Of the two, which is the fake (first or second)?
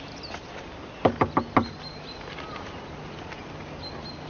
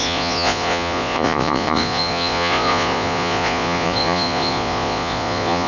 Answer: second